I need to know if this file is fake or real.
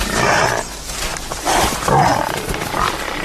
real